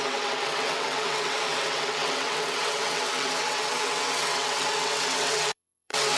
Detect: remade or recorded remade